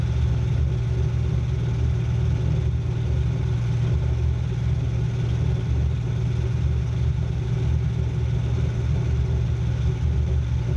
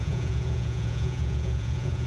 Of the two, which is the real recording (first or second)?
first